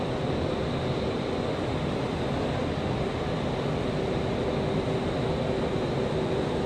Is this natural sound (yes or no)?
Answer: yes